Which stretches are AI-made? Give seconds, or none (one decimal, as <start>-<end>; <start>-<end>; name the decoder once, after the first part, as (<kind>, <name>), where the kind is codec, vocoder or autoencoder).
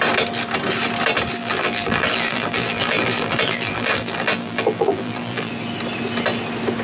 1.4-5.5 (vocoder, BigVGAN v2)